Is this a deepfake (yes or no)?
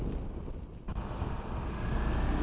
no